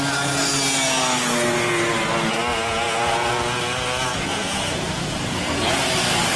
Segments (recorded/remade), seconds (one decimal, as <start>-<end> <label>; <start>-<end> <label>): 0.0-2.5 recorded; 2.5-3.3 remade; 3.3-4.1 recorded; 4.1-5.8 remade; 5.8-6.4 recorded